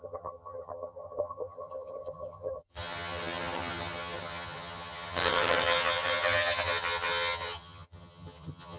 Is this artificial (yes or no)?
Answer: yes